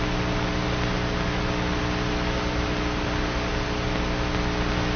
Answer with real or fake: real